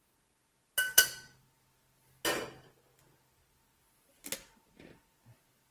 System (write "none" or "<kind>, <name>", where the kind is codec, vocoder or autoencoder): none